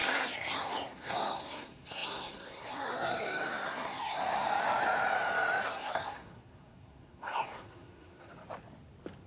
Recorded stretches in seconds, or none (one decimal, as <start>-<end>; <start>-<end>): 4.2-5.6; 8.3-9.3